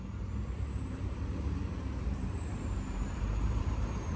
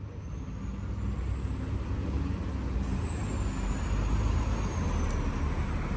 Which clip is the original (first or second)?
second